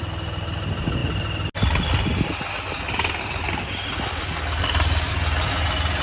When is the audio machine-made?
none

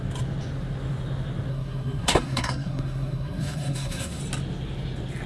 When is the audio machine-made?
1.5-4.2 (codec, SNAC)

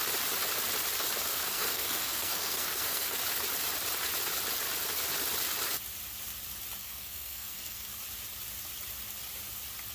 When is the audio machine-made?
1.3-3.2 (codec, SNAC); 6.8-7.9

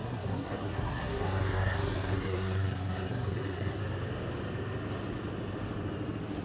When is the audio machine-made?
0.0-3.8 (codec, SNAC)

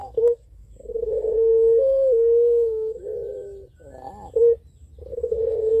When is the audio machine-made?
0.0-3.0 (codec, SNAC); 5.1-5.8